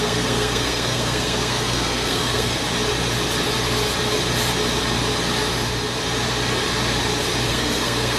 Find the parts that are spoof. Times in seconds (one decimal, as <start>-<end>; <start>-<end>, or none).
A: 0.0-2.6; 7.5-8.2